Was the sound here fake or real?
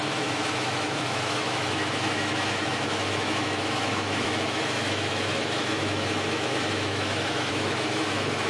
fake